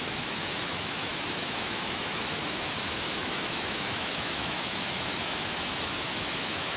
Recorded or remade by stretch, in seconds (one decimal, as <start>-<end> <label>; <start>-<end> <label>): 0.0-6.8 remade